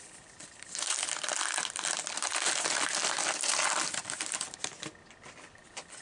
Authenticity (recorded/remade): recorded